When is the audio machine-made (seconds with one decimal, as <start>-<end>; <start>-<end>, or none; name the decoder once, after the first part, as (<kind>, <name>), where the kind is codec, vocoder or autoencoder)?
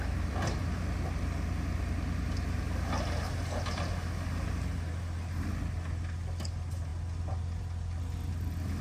none